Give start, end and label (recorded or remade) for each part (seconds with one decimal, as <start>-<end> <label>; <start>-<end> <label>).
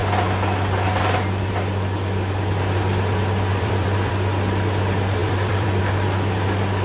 0.0-3.5 recorded; 3.5-4.1 remade; 4.1-5.2 recorded; 5.2-5.8 remade; 5.8-6.8 recorded